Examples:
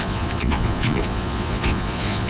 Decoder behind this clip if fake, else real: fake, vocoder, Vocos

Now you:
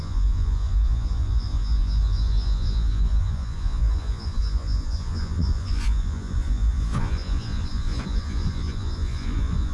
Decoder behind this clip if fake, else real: fake, vocoder, Vocos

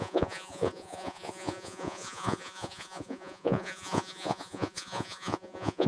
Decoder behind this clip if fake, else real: fake, vocoder, Vocos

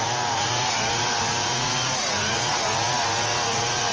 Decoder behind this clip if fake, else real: fake, vocoder, Vocos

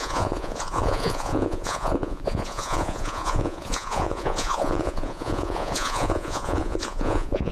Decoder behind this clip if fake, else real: fake, vocoder, Vocos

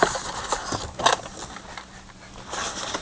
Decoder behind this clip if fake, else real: real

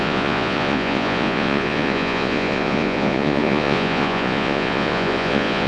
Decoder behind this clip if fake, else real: fake, vocoder, Vocos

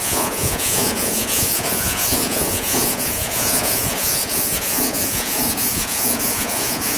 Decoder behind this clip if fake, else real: fake, vocoder, Vocos